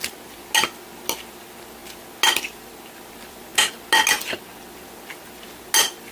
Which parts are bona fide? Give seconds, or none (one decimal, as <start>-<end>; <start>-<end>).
0.0-6.1